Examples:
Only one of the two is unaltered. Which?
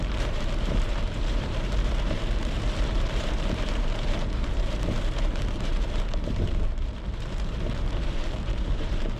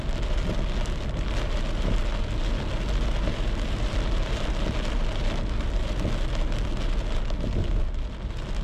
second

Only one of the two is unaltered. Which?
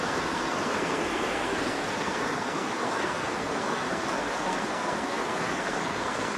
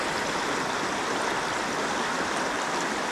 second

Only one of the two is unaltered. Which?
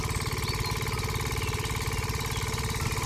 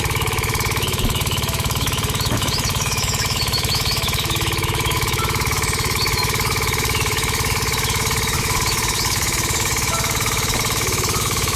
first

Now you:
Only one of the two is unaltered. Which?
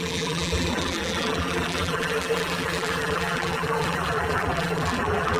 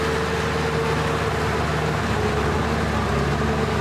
second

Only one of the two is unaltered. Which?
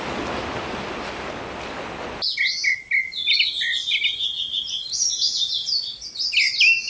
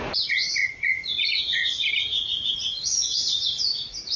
first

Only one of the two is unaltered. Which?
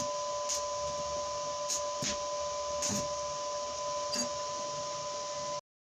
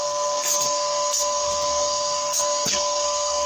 first